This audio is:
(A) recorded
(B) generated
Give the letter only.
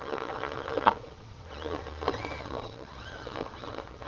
B